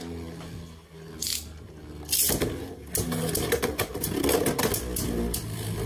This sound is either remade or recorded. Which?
recorded